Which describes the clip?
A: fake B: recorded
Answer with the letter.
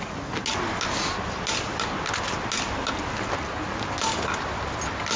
B